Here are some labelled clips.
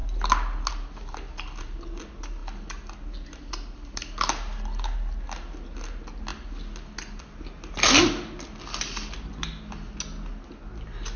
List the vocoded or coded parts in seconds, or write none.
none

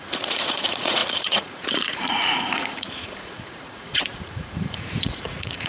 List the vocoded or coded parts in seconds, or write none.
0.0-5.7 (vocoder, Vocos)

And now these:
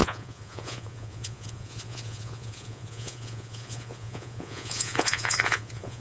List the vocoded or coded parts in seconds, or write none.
0.0-6.0 (vocoder, Vocos)

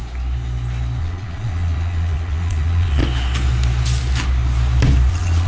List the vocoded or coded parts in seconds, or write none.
1.0-3.0 (vocoder, Vocos); 5.1-5.5

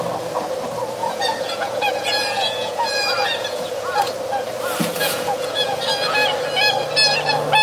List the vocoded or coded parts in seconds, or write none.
1.0-4.1 (vocoder, Vocos); 5.0-5.8